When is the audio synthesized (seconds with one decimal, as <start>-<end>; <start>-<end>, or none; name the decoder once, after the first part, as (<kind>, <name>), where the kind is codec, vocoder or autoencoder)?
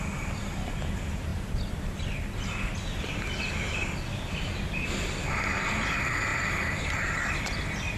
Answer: 6.3-7.5 (vocoder, BigVGAN v2)